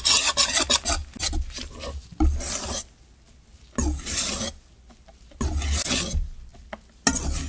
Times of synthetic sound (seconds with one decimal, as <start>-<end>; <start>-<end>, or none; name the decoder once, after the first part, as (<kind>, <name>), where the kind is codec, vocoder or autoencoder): none

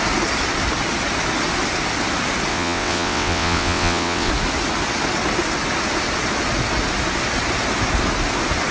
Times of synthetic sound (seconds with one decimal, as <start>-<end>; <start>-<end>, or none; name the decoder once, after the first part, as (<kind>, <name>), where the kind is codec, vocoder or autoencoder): 2.5-4.3 (vocoder, WaveNeXt)

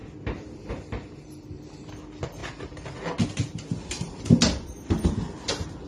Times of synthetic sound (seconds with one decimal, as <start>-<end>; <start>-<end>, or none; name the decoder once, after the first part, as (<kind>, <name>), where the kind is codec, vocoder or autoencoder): none

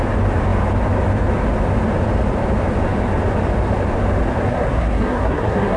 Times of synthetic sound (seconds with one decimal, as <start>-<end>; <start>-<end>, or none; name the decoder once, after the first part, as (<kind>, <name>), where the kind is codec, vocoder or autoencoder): 4.5-5.8 (codec, SNAC)